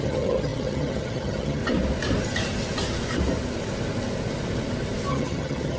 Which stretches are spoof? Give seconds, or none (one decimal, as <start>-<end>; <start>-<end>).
0.0-1.6; 5.1-5.8